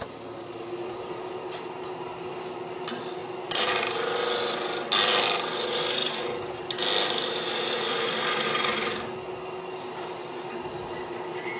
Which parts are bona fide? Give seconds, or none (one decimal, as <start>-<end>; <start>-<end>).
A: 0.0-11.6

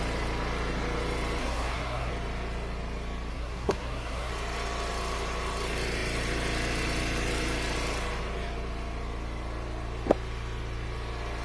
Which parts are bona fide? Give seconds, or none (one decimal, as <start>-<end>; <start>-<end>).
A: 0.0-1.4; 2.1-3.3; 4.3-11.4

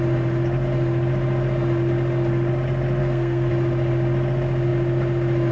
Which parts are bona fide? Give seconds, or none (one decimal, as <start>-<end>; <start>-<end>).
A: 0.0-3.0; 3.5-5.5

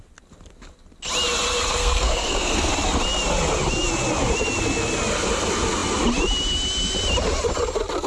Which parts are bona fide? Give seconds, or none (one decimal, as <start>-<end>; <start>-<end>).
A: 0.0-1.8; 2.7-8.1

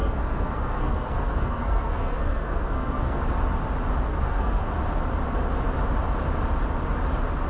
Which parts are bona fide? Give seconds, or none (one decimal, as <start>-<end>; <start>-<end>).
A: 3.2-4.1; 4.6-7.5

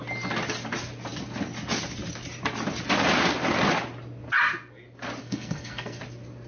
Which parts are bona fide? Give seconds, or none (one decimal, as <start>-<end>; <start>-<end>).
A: 0.0-5.2; 6.0-6.5

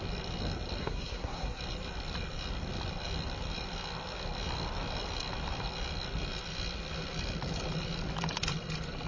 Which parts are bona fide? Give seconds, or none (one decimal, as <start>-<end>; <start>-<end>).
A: 0.0-0.8; 1.6-9.1

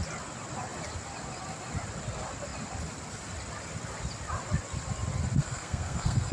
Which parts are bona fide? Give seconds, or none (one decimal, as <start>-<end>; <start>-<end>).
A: 0.0-5.4